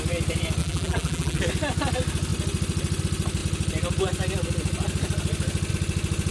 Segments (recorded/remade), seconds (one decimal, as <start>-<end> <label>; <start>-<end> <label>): 0.0-0.6 recorded; 0.6-1.4 remade; 1.4-6.3 recorded